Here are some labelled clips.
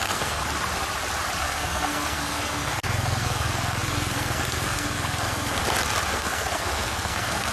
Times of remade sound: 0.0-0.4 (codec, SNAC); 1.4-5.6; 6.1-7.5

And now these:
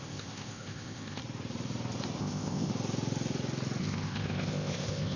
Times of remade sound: 0.0-1.2 (codec, ZipCodec); 2.2-2.7; 3.8-5.2

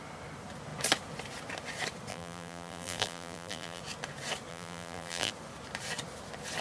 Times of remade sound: 2.1-3.8 (vocoder, BigVGAN v2); 4.5-5.3

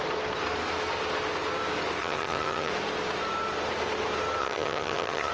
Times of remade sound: 2.0-2.7 (vocoder, HiFi-GAN); 4.4-5.3

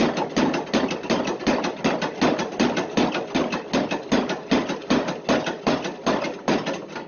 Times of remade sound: none

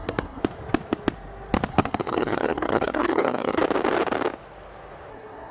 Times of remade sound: 0.0-0.4 (codec, SNAC); 1.7-3.6; 5.1-5.5